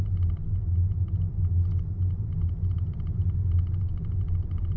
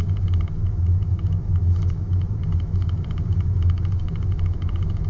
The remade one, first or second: second